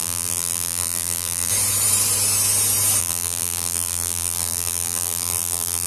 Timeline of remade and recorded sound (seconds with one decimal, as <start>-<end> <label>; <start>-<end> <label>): 0.0-1.5 remade; 1.5-3.0 recorded; 3.0-5.9 remade